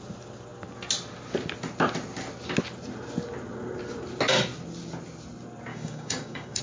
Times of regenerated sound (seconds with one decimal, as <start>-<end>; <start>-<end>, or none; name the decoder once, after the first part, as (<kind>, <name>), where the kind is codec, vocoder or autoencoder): 5.7-6.6 (codec, DAC)